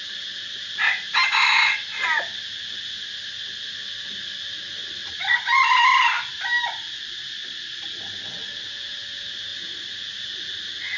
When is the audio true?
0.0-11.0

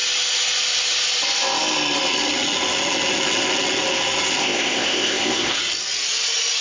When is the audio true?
0.0-4.4; 5.6-6.6

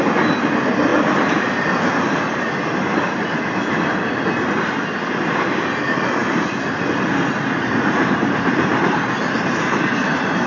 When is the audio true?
0.0-10.5

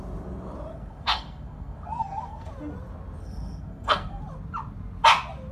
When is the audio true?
0.0-0.7; 2.5-3.2; 4.2-5.5

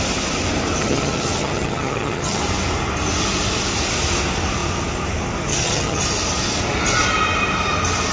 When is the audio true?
0.0-0.8; 2.4-5.5; 6.0-8.1

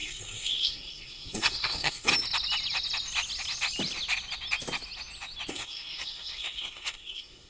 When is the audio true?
2.1-5.5